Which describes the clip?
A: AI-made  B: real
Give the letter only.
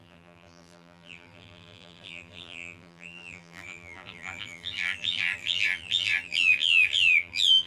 A